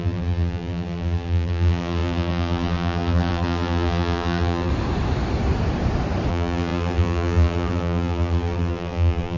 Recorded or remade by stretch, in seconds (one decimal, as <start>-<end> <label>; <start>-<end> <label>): 0.0-4.7 remade; 4.7-6.3 recorded; 6.3-9.4 remade

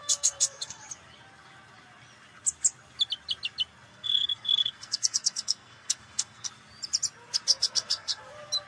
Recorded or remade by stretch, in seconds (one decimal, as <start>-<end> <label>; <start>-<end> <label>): 0.0-0.8 remade; 0.8-3.9 recorded; 3.9-6.5 remade; 6.5-7.5 recorded; 7.5-8.2 remade; 8.2-8.7 recorded

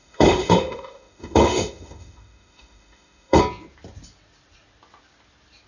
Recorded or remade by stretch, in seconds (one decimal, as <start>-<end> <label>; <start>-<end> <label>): 0.0-3.4 remade; 3.4-5.7 recorded

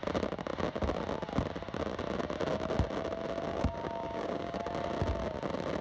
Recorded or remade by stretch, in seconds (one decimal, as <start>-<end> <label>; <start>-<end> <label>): 0.0-3.5 recorded; 3.5-4.7 remade; 4.7-5.8 recorded

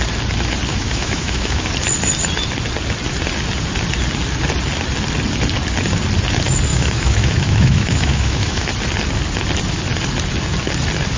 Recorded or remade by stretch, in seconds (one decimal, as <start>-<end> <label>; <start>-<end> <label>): 0.0-0.7 recorded; 0.7-1.7 remade; 1.7-6.7 recorded; 6.7-8.7 remade; 8.7-11.2 recorded

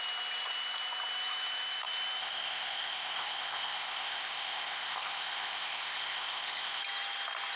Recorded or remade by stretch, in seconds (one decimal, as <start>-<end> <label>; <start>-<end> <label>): 0.0-2.2 recorded; 2.2-6.8 remade; 6.8-7.6 recorded